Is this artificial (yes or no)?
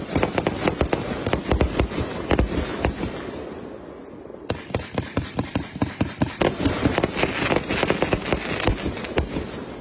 no